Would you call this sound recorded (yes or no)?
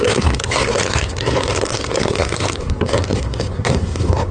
no